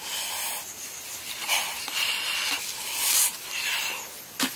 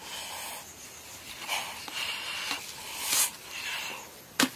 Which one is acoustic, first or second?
second